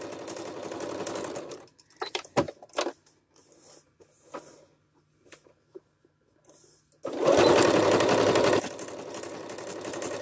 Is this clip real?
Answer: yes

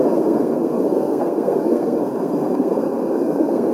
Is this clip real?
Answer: no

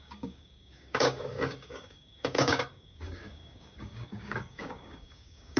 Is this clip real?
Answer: no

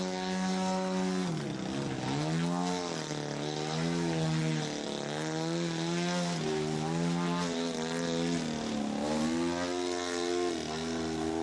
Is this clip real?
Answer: yes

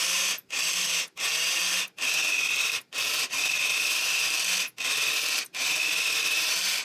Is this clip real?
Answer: yes